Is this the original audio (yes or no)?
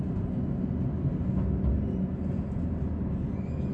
yes